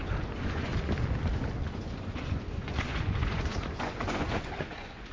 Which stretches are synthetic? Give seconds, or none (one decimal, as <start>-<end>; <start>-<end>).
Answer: 0.0-0.7; 1.6-5.1